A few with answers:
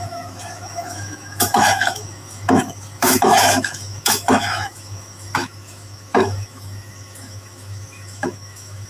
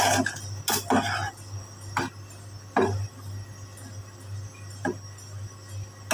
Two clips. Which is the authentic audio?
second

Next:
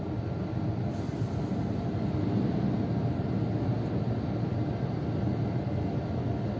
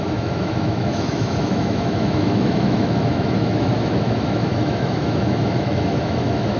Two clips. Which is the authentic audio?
first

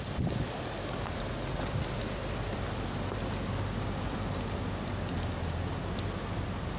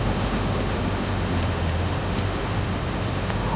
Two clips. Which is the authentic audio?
first